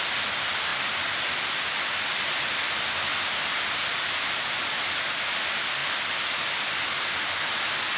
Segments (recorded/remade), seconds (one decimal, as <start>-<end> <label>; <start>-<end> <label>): 0.0-0.7 recorded; 0.7-1.6 remade; 1.6-3.1 recorded; 3.1-4.3 remade; 4.3-8.0 recorded